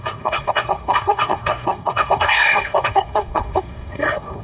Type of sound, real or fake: fake